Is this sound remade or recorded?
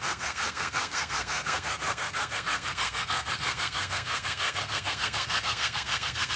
remade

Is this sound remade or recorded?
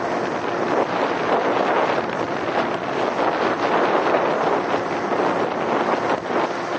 recorded